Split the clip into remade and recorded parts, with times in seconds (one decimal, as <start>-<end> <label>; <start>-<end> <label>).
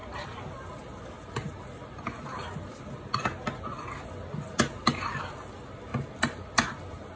0.0-7.2 recorded